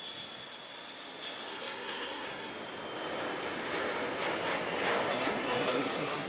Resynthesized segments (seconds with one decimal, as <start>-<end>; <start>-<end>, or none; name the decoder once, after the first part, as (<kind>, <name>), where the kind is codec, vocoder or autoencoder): 1.5-2.5 (codec, SNAC); 5.1-6.3